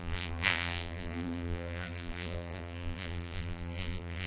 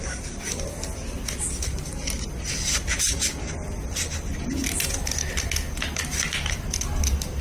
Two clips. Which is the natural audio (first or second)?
second